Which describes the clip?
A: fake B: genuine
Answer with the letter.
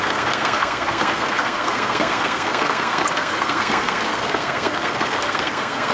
A